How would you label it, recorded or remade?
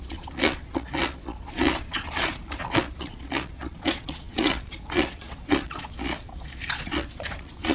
remade